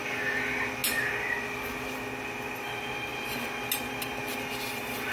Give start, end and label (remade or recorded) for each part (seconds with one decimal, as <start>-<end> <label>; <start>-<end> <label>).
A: 0.0-5.1 recorded